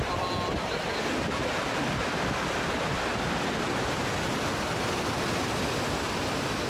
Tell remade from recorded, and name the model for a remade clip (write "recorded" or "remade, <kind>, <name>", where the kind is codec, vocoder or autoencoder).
recorded